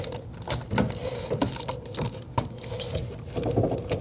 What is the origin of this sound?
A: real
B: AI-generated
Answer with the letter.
A